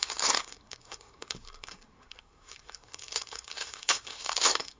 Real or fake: fake